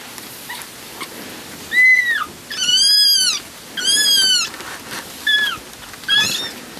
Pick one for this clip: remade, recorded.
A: recorded